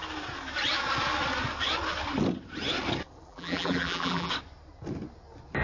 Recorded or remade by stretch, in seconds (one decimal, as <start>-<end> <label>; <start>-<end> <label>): 0.0-3.3 recorded; 3.3-4.3 remade; 4.3-5.6 recorded